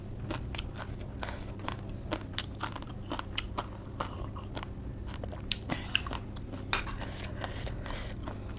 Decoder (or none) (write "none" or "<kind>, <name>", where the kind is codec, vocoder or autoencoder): none